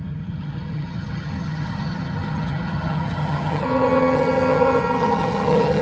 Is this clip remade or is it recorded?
remade